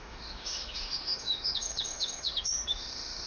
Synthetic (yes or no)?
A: yes